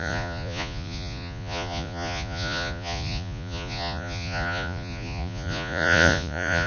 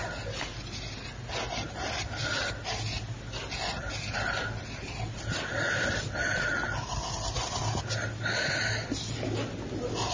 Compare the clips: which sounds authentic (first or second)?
second